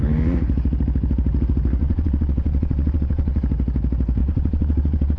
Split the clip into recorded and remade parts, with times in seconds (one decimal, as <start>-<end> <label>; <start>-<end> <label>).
0.0-1.8 recorded; 1.8-3.4 remade; 3.4-4.2 recorded; 4.2-5.2 remade

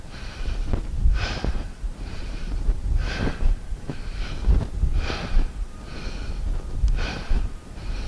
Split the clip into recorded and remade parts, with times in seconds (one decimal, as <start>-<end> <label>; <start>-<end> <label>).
0.0-3.0 remade; 3.0-7.1 recorded; 7.1-8.1 remade

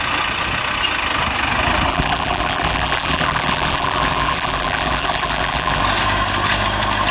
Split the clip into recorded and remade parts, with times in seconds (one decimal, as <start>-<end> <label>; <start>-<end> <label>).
0.0-1.9 recorded; 1.9-5.8 remade; 5.8-7.1 recorded

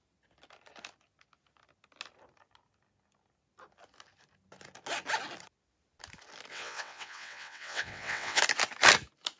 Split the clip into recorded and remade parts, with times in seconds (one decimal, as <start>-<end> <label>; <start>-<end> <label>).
0.0-6.5 recorded; 6.5-8.4 remade; 8.4-9.4 recorded